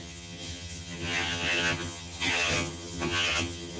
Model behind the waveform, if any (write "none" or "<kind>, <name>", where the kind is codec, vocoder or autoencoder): vocoder, HiFi-GAN